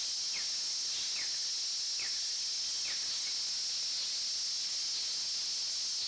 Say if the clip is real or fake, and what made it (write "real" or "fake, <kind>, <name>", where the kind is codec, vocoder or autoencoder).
real